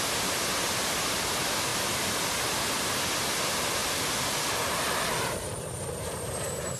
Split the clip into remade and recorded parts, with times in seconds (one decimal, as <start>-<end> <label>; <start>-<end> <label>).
0.0-3.8 recorded; 3.8-6.8 remade